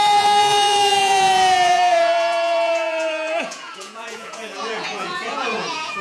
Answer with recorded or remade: remade